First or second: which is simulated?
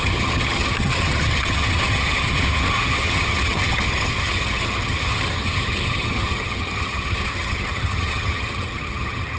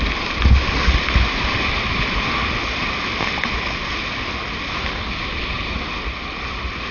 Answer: first